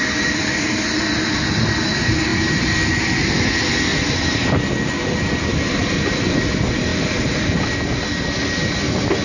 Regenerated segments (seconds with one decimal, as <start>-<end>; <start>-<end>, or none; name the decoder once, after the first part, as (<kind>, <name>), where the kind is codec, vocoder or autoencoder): 3.9-4.4 (vocoder, BigVGAN v2); 6.9-7.7